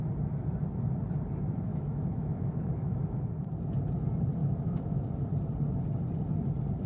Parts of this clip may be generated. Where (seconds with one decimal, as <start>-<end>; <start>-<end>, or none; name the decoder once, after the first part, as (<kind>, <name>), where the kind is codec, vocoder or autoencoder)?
1.7-3.3 (autoencoder, DAC-VAE); 4.4-5.1

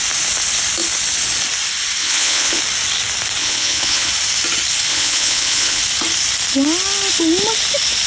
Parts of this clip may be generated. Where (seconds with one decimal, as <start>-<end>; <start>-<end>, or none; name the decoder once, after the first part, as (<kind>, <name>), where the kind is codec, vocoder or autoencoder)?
2.0-2.6 (vocoder, Vocos); 3.4-4.1; 4.9-5.8

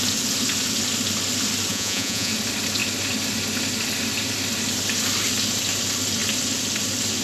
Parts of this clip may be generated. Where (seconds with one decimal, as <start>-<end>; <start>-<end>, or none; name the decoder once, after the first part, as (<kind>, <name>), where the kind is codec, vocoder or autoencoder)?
1.7-2.3 (vocoder, Vocos)

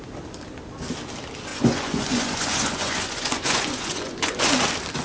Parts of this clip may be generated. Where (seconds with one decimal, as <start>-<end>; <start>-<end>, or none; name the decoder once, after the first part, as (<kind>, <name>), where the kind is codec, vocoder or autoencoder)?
1.5-4.5 (vocoder, Vocos)

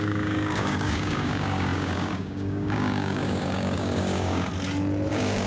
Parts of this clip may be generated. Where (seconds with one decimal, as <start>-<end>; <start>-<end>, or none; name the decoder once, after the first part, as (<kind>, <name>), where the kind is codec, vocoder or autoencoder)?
0.0-4.5 (codec, DAC); 5.1-5.5

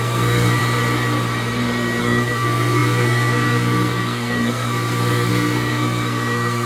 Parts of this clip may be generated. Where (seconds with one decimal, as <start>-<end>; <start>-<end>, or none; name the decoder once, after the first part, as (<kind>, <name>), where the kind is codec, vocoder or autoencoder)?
0.0-0.6 (codec, SNAC); 2.0-6.7